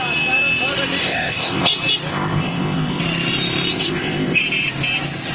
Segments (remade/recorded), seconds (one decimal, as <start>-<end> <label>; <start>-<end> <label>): 0.0-1.0 recorded; 1.0-1.7 remade; 1.7-2.1 recorded; 2.1-3.0 remade; 3.0-3.7 recorded; 3.7-4.4 remade; 4.4-5.3 recorded